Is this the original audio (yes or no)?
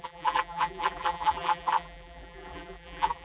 no